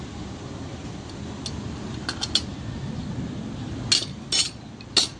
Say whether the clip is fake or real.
real